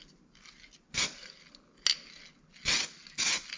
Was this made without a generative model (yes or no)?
yes